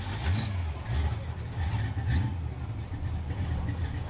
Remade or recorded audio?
recorded